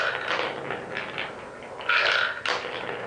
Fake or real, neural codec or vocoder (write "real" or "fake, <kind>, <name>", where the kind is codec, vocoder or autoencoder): real